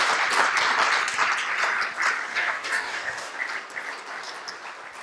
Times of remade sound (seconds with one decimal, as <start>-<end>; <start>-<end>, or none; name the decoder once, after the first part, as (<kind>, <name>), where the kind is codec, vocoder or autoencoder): 2.3-3.3 (codec, DAC)